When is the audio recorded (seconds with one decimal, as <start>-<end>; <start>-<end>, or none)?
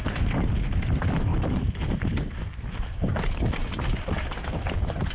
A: 0.0-1.3; 4.4-5.1